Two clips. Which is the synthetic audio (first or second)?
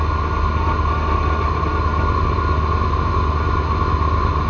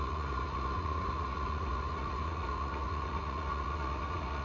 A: second